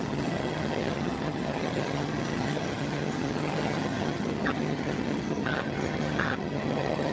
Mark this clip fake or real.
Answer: fake